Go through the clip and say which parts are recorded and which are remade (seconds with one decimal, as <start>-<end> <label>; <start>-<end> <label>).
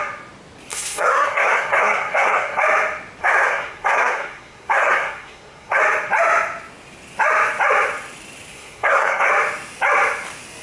0.0-0.7 recorded; 0.7-2.6 remade; 2.6-3.2 recorded; 3.2-5.8 remade; 5.8-8.5 recorded; 8.5-9.3 remade; 9.3-10.6 recorded